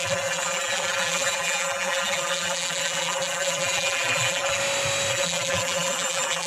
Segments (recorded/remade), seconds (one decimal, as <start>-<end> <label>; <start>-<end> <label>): 0.0-4.6 remade; 4.6-5.1 recorded; 5.1-6.5 remade